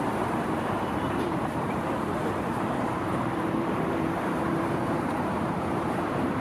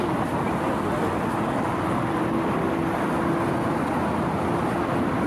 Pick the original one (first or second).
second